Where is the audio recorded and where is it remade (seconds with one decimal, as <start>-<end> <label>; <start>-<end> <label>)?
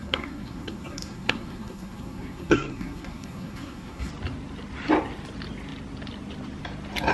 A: 0.0-4.1 remade; 4.1-7.1 recorded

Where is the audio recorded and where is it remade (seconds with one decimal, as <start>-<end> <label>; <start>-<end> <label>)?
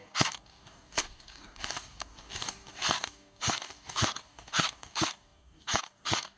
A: 0.0-6.4 remade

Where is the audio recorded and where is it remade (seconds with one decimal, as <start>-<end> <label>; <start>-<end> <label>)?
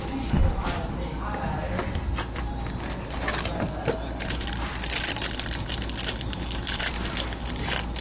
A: 0.0-8.0 recorded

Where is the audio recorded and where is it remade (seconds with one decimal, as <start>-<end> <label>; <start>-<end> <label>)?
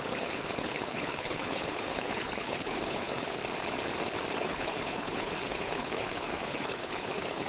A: 0.0-3.4 remade; 3.4-4.4 recorded; 4.4-7.5 remade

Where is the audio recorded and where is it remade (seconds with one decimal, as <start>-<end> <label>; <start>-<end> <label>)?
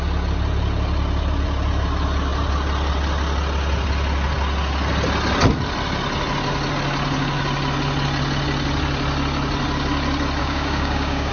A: 0.0-10.4 recorded; 10.4-11.3 remade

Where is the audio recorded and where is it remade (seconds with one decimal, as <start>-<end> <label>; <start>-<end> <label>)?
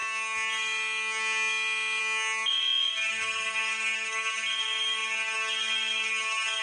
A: 0.0-3.1 recorded; 3.1-4.3 remade; 4.3-6.6 recorded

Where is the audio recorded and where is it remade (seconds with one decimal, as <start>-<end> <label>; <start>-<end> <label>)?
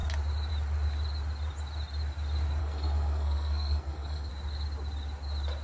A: 0.0-2.6 recorded; 2.6-4.3 remade; 4.3-5.6 recorded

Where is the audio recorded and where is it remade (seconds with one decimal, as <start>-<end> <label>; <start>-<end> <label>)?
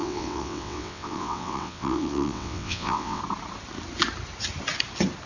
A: 0.0-3.2 remade; 3.2-5.3 recorded